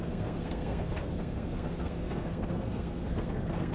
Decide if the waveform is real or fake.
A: fake